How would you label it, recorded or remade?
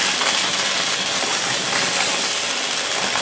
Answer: recorded